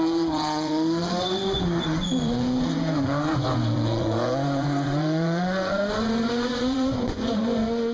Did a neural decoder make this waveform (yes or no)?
yes